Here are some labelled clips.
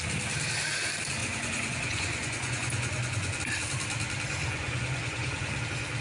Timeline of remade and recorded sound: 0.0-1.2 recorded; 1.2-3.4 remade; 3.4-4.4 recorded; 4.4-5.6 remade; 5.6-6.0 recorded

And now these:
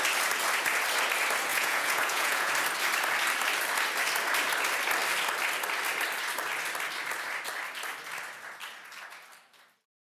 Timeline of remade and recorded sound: 0.0-1.5 recorded; 1.5-2.5 remade; 2.5-10.1 recorded

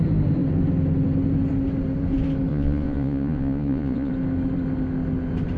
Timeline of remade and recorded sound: 0.0-2.5 recorded; 2.5-4.1 remade; 4.1-5.6 recorded

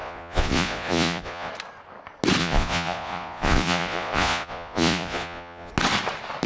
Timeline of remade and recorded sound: 0.0-1.5 remade; 1.5-2.4 recorded; 2.4-5.7 remade; 5.7-6.5 recorded